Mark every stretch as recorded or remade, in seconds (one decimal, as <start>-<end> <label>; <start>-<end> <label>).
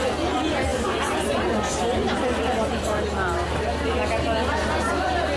0.0-5.4 recorded